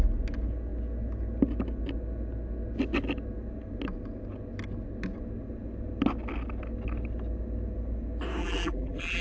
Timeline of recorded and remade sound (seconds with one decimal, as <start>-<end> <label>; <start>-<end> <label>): 0.0-8.4 recorded; 8.4-9.2 remade